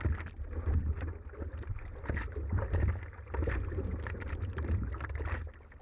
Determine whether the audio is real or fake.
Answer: real